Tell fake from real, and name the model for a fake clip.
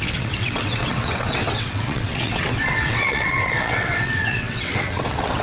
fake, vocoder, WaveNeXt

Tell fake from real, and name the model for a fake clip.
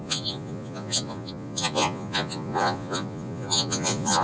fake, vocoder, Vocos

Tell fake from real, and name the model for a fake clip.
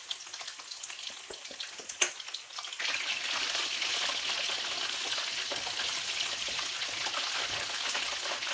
real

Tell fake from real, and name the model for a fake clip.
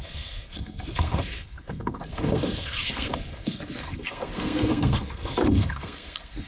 fake, codec, SNAC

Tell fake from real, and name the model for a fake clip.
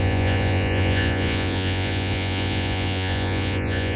fake, vocoder, Vocos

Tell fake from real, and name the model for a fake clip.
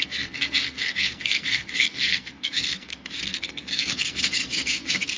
fake, codec, SNAC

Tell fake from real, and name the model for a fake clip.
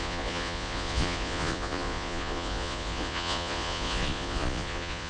fake, vocoder, Vocos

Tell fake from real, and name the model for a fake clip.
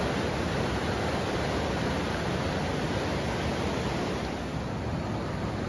real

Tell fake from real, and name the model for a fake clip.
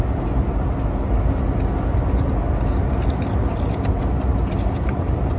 real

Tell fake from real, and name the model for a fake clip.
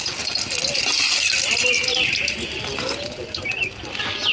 real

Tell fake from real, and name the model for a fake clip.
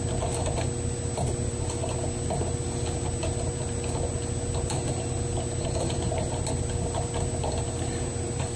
real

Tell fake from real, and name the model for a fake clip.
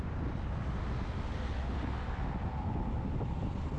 real